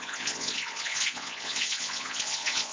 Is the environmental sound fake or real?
fake